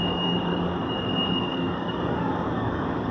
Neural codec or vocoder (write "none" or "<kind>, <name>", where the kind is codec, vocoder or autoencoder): codec, DAC